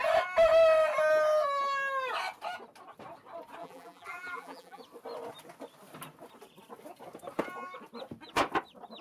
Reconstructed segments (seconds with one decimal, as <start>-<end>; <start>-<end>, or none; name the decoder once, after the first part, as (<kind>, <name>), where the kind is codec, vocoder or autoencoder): 3.6-4.8 (vocoder, BigVGAN v2)